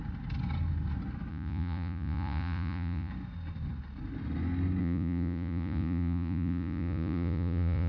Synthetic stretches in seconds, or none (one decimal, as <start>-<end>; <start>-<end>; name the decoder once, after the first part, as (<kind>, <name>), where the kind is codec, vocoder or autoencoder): 1.3-3.1 (vocoder, Vocos); 4.8-7.9